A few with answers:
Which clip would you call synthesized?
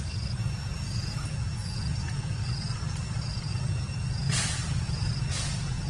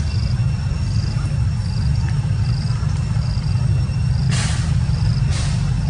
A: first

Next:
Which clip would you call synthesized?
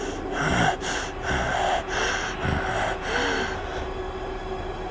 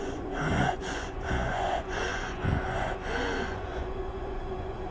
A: second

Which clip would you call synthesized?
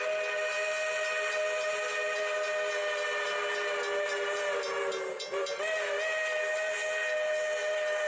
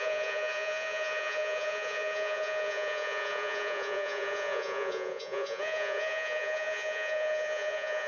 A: second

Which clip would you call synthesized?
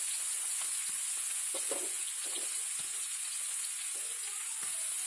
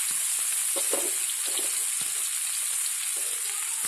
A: first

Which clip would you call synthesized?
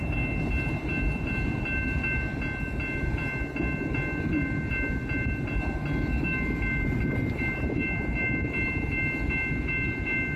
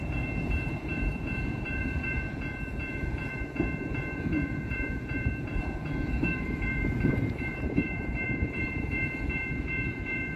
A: second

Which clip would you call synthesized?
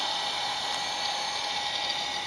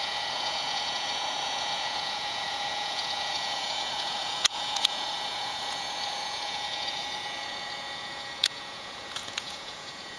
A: second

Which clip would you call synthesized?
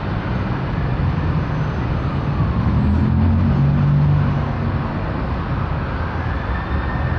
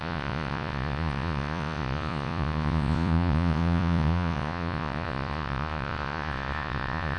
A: second